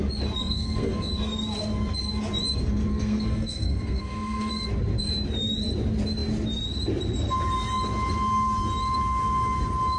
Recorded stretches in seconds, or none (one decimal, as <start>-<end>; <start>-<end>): 0.0-0.4; 1.1-2.9; 4.5-10.0